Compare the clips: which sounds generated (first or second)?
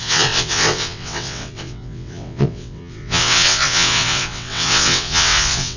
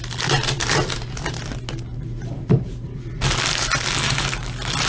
first